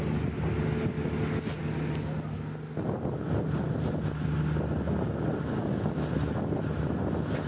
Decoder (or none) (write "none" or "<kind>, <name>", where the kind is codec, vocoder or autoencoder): none